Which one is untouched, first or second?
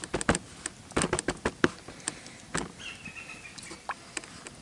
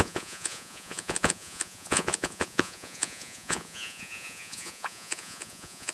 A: first